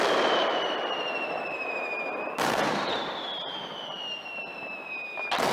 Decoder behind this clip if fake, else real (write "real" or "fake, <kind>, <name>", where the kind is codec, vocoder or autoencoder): real